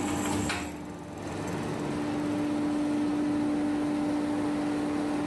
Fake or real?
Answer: real